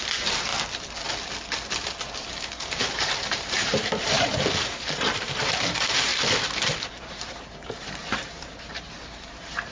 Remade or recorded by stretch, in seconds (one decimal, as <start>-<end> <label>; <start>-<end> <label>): 0.0-0.5 remade; 0.5-2.3 recorded; 2.3-6.1 remade; 6.1-6.9 recorded; 6.9-9.7 remade